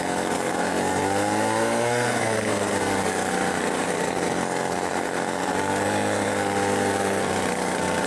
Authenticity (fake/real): fake